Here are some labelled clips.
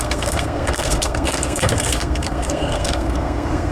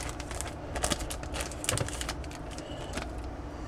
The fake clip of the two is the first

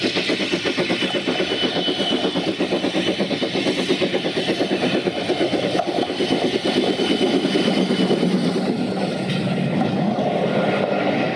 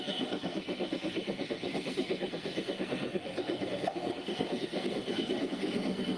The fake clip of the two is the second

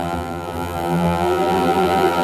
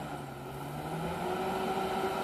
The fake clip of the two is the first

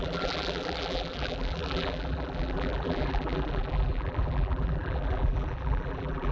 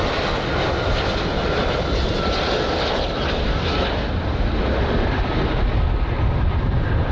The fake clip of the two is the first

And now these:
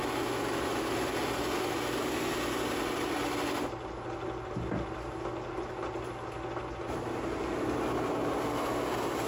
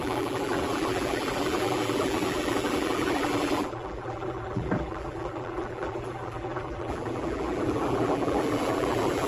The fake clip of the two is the second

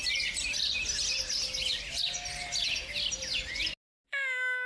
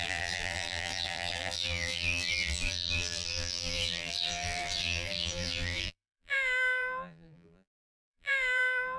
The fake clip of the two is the second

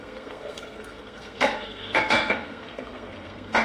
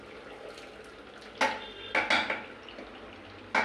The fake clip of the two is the first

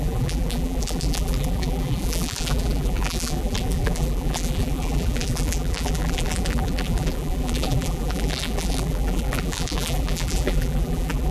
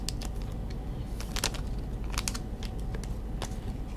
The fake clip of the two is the first